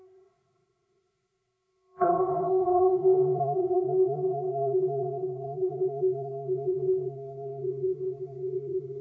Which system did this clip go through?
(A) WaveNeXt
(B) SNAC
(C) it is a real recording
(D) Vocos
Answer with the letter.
B